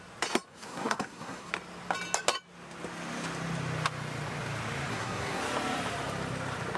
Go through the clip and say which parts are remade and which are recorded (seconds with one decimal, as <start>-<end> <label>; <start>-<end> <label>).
0.0-0.5 recorded; 0.5-1.5 remade; 1.5-4.9 recorded; 4.9-5.4 remade; 5.4-6.8 recorded